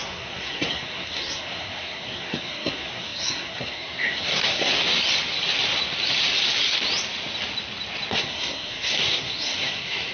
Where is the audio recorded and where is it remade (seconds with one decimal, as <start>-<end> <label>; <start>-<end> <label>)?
0.0-4.7 remade; 4.7-8.1 recorded; 8.1-10.1 remade